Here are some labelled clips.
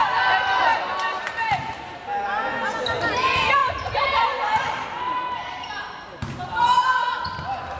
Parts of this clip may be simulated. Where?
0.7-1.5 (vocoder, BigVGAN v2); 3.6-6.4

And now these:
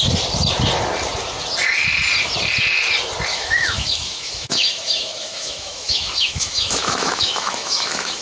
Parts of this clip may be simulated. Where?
3.3-8.2 (autoencoder, DAC-VAE)